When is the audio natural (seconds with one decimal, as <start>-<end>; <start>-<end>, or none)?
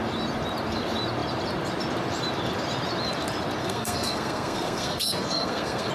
0.0-3.6